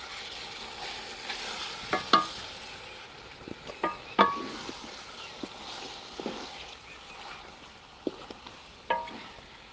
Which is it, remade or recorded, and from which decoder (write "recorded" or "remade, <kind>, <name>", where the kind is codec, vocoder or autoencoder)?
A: recorded